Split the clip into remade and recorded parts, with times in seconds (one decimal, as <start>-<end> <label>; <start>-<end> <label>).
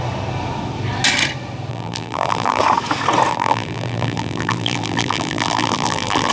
0.0-1.7 recorded; 1.7-2.6 remade; 2.6-3.3 recorded; 3.3-6.3 remade